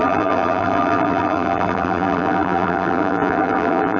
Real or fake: fake